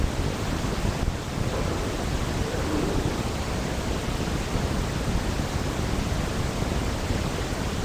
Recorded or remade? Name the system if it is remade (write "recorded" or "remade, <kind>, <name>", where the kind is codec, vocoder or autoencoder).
recorded